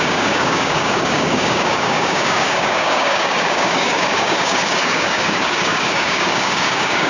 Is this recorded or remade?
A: remade